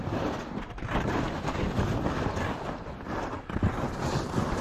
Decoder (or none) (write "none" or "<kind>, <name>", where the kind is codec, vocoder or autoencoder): none